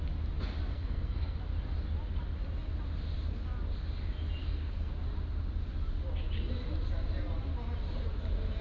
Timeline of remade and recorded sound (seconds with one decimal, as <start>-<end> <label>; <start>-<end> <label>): 0.0-0.7 recorded; 0.7-1.4 remade; 1.4-4.4 recorded; 4.4-4.9 remade; 4.9-8.6 recorded